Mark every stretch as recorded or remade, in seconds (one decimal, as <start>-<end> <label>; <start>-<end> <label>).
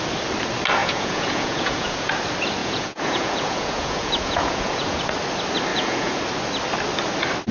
0.0-0.8 recorded; 0.8-2.1 remade; 2.1-2.6 recorded; 2.6-5.0 remade; 5.0-5.7 recorded; 5.7-6.2 remade; 6.2-7.5 recorded